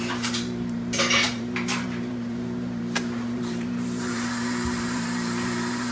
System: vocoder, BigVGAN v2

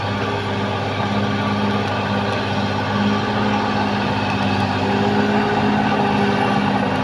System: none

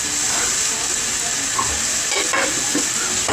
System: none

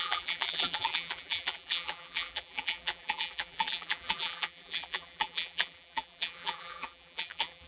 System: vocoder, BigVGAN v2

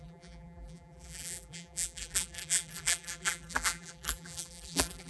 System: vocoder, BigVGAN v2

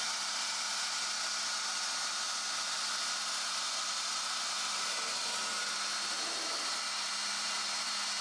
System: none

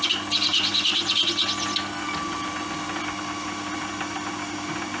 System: none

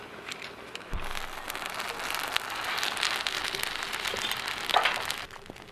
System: none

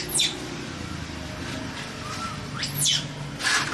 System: none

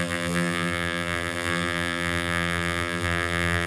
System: vocoder, BigVGAN v2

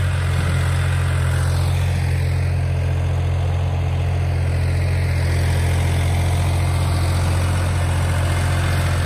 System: none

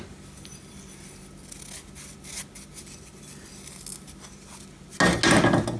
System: none